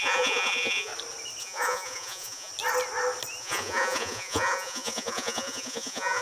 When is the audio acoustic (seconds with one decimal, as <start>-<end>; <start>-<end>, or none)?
0.9-1.4; 2.5-3.4